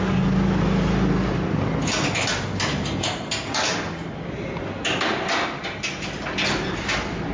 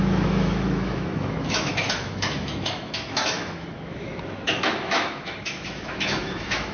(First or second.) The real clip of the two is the first